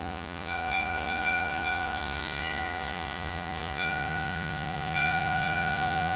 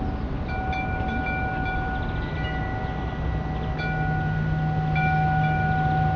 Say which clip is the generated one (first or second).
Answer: first